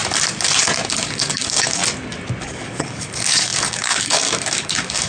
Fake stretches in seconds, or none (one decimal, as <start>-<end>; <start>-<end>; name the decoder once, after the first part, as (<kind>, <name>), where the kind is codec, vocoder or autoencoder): 1.0-1.8 (codec, DAC); 2.4-5.1